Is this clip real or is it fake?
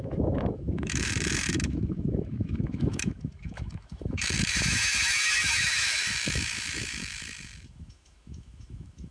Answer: fake